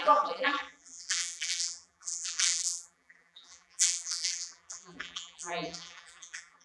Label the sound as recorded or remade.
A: remade